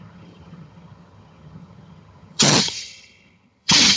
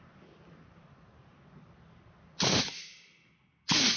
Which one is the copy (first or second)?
first